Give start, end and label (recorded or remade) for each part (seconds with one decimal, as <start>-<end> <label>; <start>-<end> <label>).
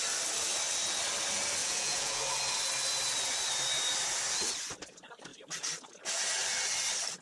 0.0-1.6 recorded; 1.6-2.2 remade; 2.2-7.2 recorded